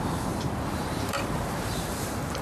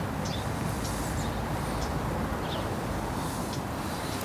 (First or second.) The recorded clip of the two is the second